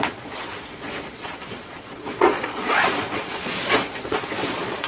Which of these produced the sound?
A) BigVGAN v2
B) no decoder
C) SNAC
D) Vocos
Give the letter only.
D